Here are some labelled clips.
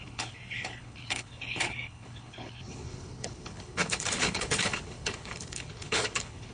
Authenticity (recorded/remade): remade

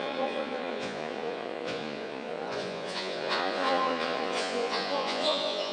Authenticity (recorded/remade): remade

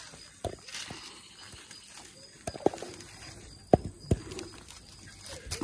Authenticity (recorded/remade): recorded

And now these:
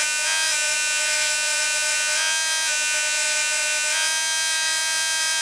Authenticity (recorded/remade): remade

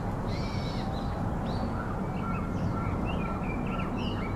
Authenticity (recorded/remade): recorded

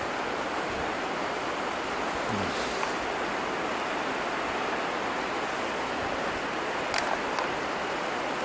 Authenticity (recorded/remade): recorded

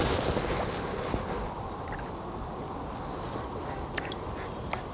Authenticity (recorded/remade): recorded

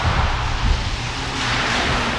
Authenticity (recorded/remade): recorded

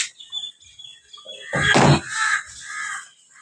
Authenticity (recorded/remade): recorded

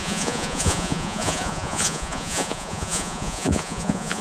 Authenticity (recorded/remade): remade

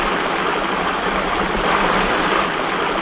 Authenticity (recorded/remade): recorded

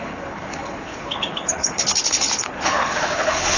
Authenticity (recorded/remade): remade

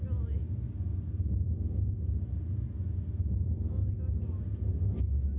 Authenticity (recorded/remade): recorded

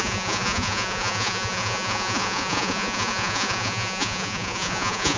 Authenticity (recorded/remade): remade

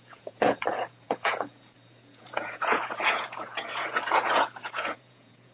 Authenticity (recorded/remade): remade